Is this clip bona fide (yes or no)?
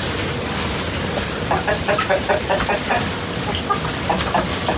no